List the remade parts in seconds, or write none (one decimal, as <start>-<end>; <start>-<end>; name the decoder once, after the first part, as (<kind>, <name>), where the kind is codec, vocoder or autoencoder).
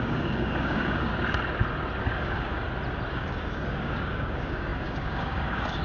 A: 0.0-1.1 (codec, DAC); 2.0-2.6; 3.1-5.8